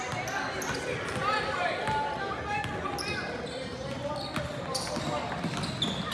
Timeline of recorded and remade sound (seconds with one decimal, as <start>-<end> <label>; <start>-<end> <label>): 0.0-6.1 recorded

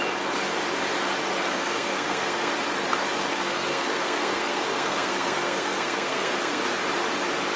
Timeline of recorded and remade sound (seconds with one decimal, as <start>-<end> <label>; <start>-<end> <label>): 0.0-1.4 recorded; 1.4-2.5 remade; 2.5-3.3 recorded; 3.3-6.6 remade; 6.6-7.6 recorded

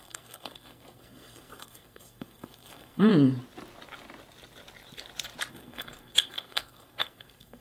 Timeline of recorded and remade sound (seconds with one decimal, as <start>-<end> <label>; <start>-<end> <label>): 0.0-3.1 remade; 3.1-5.5 recorded; 5.5-7.6 remade

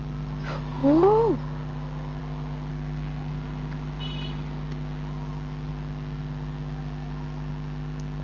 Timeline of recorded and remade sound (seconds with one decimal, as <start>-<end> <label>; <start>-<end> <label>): 0.0-2.7 recorded; 2.7-3.3 remade; 3.3-8.2 recorded

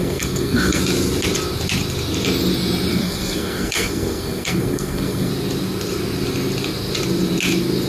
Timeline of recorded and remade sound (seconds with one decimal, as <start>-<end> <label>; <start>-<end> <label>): 0.0-0.8 remade; 0.8-2.9 recorded; 2.9-5.3 remade; 5.3-7.9 recorded